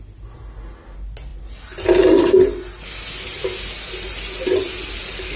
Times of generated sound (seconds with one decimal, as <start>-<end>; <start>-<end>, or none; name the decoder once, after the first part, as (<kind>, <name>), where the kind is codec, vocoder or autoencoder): none